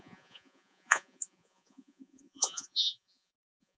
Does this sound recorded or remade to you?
remade